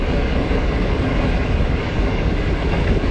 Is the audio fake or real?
fake